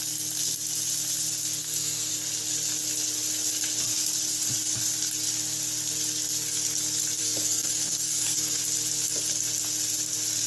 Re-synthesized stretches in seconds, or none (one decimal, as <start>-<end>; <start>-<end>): 1.6-2.1; 7.2-8.6